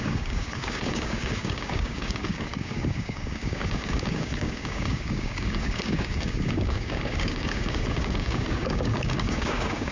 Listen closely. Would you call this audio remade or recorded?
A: remade